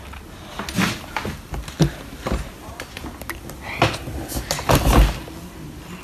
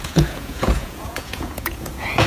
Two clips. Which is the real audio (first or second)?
first